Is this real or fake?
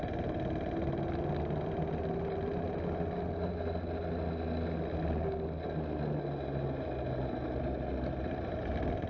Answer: real